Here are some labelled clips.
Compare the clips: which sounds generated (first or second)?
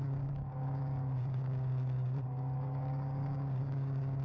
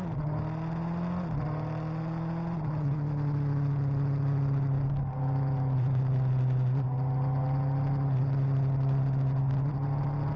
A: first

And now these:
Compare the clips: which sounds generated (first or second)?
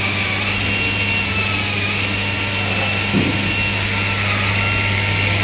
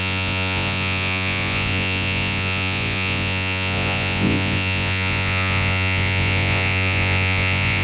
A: second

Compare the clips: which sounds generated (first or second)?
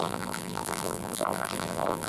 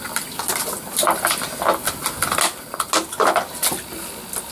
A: first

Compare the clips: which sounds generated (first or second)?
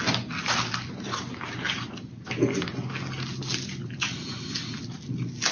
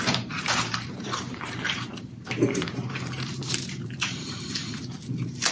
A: second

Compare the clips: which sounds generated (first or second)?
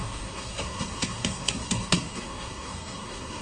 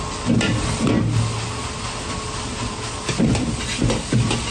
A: first